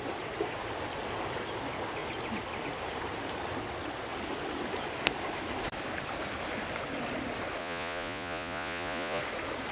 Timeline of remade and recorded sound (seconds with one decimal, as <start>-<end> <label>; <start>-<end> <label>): 0.0-7.6 recorded; 7.6-9.2 remade; 9.2-9.7 recorded